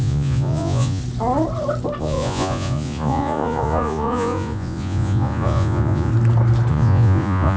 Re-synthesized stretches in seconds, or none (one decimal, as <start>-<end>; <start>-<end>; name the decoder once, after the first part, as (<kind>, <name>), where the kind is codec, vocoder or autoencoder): 0.0-1.0 (vocoder, Vocos); 2.0-6.1; 6.7-7.6